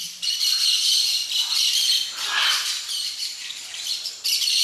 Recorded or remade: remade